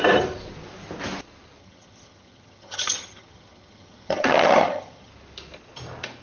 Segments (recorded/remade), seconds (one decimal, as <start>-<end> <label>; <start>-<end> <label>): 0.0-1.6 recorded; 1.6-5.1 remade; 5.1-6.2 recorded

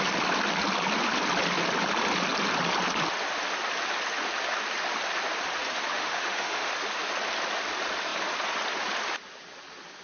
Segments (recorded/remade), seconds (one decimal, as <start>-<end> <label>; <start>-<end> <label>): 0.0-5.9 recorded; 5.9-6.7 remade; 6.7-10.0 recorded

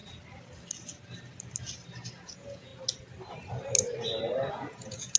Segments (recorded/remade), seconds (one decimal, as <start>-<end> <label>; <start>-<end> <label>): 0.0-2.1 recorded; 2.1-2.7 remade; 2.7-4.5 recorded; 4.5-5.2 remade

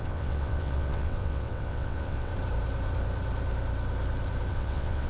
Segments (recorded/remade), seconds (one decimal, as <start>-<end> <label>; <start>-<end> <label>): 0.0-2.3 remade; 2.3-4.5 recorded; 4.5-5.1 remade